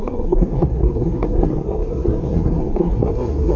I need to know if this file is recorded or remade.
remade